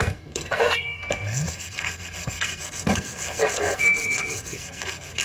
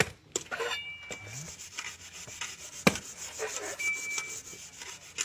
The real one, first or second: second